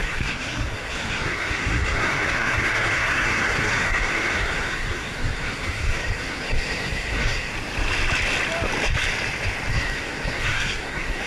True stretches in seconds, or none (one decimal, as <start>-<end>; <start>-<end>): 7.5-9.7